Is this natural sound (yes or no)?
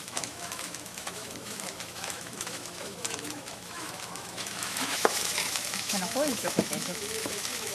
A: no